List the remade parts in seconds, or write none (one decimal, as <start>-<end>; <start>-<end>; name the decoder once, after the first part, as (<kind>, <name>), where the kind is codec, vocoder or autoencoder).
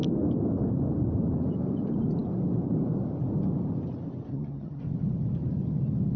4.3-4.8 (vocoder, HiFi-GAN)